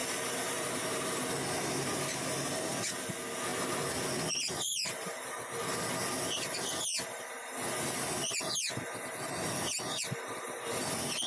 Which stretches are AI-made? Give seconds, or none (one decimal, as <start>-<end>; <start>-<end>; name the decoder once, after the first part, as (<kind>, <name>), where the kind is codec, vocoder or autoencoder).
0.0-1.2 (vocoder, BigVGAN v2)